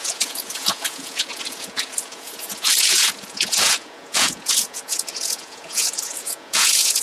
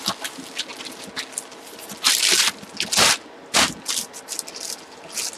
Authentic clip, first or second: second